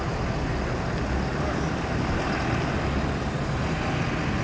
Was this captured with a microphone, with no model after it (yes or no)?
yes